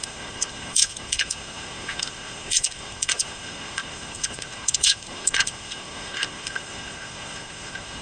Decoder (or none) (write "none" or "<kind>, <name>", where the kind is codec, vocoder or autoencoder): codec, SNAC